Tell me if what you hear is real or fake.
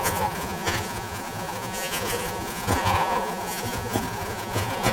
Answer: fake